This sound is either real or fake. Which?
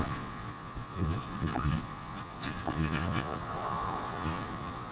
fake